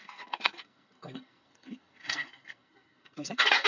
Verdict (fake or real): fake